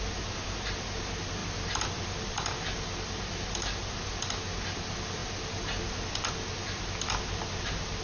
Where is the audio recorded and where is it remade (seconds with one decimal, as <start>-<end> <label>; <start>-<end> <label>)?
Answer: 0.0-8.0 recorded